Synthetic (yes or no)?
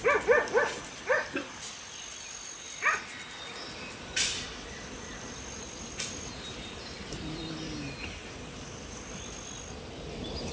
no